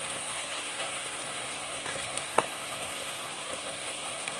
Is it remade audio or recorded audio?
remade